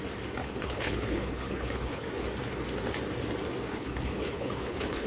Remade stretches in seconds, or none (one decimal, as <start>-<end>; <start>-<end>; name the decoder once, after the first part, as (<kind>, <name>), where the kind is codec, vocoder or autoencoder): 0.4-2.1 (codec, HILCodec); 3.7-5.1